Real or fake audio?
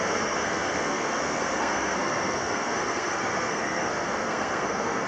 fake